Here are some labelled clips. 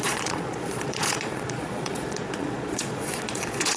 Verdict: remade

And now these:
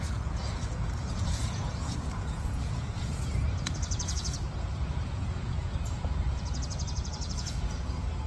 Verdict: remade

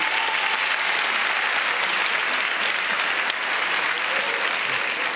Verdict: recorded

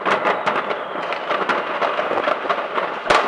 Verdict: recorded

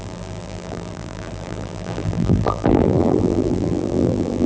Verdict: remade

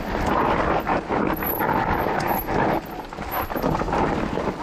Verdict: recorded